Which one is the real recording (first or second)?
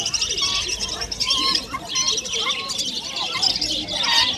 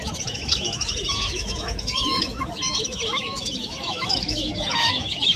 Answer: first